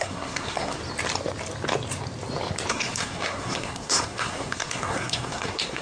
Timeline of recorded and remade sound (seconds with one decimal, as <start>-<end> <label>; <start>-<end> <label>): 0.0-0.8 remade; 0.8-2.7 recorded; 2.7-5.8 remade